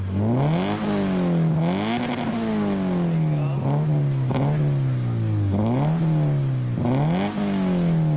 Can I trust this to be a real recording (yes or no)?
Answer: yes